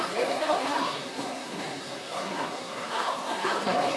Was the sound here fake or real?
fake